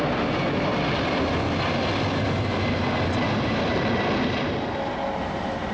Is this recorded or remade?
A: recorded